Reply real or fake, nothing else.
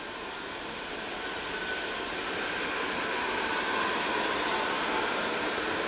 real